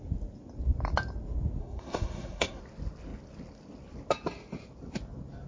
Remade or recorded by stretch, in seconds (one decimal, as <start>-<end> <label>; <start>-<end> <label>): 0.0-1.6 recorded; 1.6-2.6 remade; 2.6-5.5 recorded